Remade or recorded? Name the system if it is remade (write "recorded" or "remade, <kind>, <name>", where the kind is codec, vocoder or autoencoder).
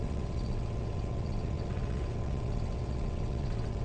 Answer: remade, vocoder, WaveNeXt